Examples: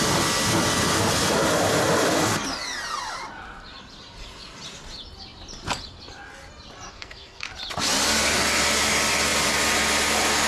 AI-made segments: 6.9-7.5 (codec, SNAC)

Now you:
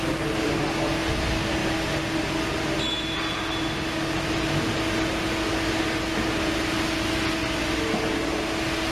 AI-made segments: none